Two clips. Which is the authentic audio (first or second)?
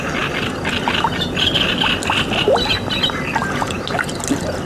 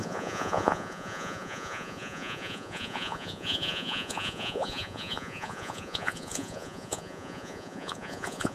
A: first